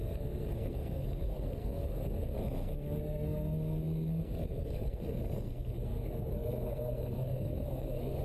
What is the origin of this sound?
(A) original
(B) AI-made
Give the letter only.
B